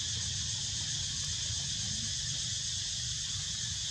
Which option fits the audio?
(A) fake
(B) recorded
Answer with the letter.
B